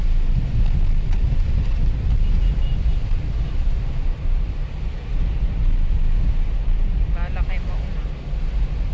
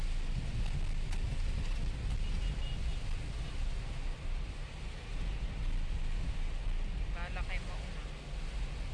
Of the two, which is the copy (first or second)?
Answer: first